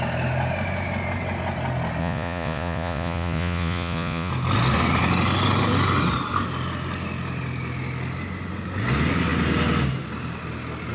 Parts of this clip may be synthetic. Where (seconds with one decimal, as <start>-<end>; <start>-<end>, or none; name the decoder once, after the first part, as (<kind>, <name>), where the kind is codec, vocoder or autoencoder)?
2.0-4.3 (vocoder, Vocos)